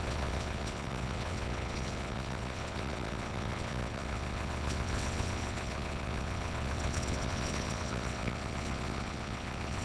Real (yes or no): no